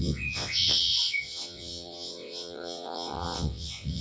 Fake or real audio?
fake